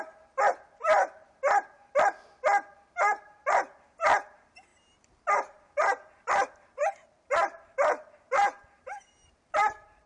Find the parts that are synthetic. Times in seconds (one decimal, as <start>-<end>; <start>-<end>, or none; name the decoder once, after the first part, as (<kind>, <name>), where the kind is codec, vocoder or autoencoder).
4.7-10.1 (vocoder, BigVGAN v2)